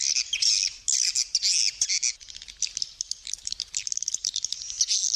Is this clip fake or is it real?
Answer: real